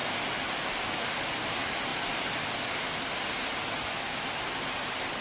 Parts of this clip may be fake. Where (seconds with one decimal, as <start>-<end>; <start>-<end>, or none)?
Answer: none